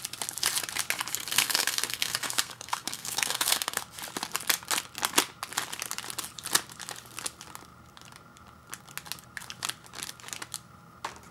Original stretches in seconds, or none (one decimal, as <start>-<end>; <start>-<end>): 0.0-1.2; 3.8-11.3